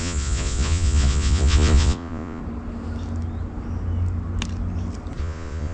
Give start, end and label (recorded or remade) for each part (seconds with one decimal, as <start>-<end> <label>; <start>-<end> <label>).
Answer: 0.0-2.4 remade; 2.4-5.2 recorded; 5.2-5.7 remade